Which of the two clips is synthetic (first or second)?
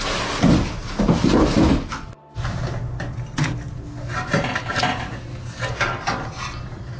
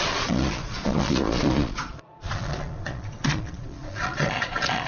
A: second